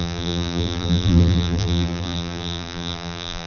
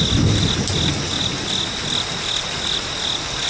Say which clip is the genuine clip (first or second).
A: second